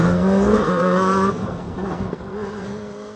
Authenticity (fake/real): fake